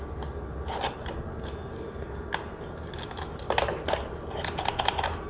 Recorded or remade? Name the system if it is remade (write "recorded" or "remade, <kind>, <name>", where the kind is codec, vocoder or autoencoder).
recorded